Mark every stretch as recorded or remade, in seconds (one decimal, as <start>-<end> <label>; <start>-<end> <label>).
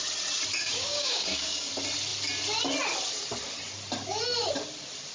0.0-0.6 recorded; 0.6-1.7 remade; 1.7-5.1 recorded